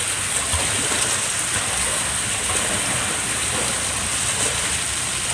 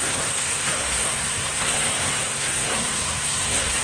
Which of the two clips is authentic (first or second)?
first